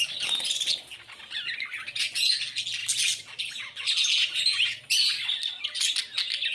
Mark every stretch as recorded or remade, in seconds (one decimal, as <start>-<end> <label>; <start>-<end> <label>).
0.0-4.2 recorded; 4.2-4.8 remade; 4.8-6.5 recorded